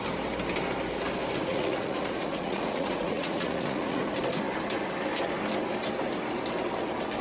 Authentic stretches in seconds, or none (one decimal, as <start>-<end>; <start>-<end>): 0.0-1.5; 4.0-7.2